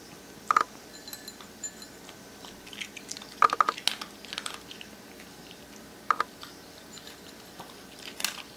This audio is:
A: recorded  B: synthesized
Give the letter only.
A